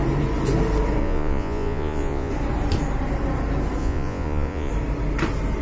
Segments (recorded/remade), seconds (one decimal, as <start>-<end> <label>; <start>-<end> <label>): 0.0-1.0 recorded; 1.0-2.3 remade; 2.3-3.8 recorded; 3.8-4.7 remade; 4.7-5.6 recorded